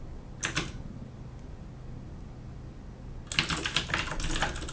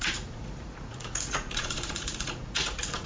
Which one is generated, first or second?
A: second